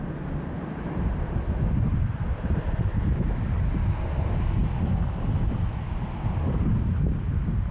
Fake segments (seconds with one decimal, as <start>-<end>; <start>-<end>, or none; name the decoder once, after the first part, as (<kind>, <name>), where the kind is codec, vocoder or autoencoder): none